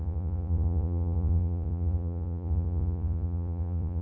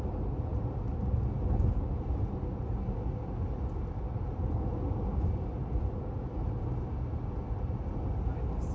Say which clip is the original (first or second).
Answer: second